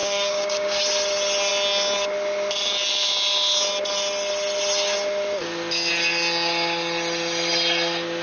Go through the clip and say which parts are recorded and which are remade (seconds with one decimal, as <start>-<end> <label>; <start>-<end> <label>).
0.0-0.8 remade; 0.8-8.2 recorded